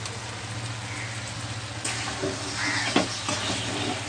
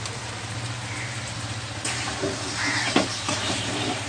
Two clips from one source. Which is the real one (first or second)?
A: first